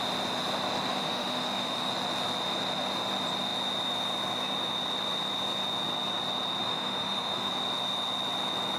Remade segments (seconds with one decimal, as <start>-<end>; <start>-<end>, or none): 0.9-1.9; 6.6-7.5